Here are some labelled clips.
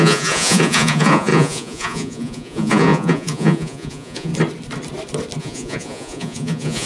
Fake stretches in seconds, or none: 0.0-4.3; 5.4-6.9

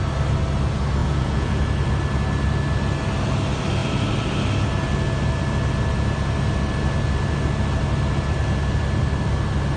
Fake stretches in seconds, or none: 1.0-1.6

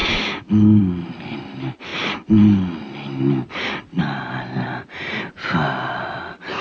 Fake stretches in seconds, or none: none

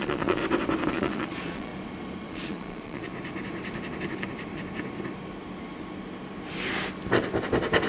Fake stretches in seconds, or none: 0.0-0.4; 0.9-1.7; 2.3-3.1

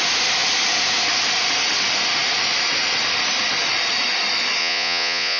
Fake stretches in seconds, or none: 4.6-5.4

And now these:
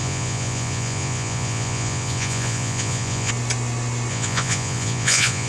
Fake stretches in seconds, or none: 0.0-3.3; 4.1-5.5